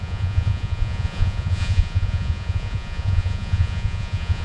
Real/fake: fake